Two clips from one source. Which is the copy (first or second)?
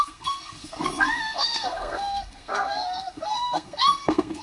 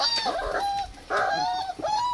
first